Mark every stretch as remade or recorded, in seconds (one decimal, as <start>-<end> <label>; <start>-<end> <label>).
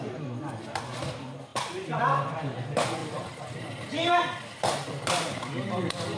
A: 0.0-6.2 remade